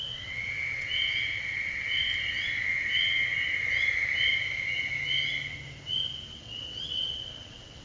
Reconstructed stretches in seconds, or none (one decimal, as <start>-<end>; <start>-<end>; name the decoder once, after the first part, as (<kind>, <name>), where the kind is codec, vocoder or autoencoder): 0.0-2.1 (vocoder, WaveNeXt); 2.7-3.2; 6.3-7.8